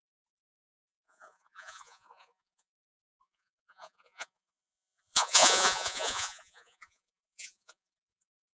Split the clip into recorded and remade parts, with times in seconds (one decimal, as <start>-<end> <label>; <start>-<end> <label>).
0.0-8.5 remade